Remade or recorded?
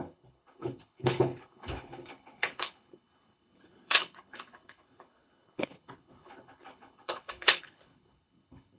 remade